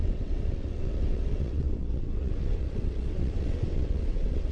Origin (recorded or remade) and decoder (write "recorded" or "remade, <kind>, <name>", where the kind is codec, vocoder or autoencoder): remade, vocoder, WaveNeXt